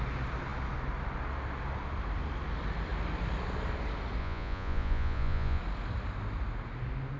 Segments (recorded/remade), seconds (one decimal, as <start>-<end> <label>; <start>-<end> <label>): 0.0-4.2 recorded; 4.2-5.6 remade; 5.6-7.2 recorded